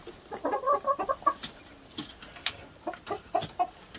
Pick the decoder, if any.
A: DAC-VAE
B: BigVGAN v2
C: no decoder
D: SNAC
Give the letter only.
C